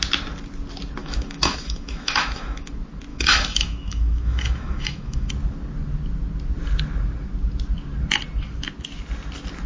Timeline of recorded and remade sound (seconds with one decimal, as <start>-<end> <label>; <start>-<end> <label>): 0.0-1.0 recorded; 1.0-2.7 remade; 2.7-3.1 recorded; 3.1-5.3 remade; 5.3-9.7 recorded